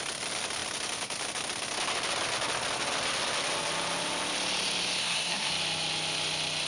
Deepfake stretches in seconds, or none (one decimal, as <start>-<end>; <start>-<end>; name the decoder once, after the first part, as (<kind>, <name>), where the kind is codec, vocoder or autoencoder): 5.0-5.5 (codec, SNAC)